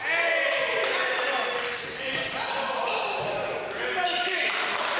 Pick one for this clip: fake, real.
real